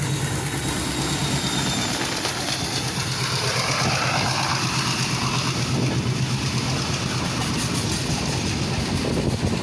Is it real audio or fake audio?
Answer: real